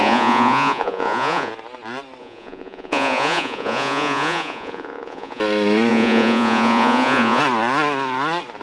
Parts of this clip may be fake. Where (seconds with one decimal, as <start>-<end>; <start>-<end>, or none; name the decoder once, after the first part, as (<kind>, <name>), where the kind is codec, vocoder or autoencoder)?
0.0-1.5 (vocoder, Vocos); 2.2-5.4; 5.9-7.4